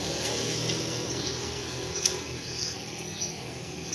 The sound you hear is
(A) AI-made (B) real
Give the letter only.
A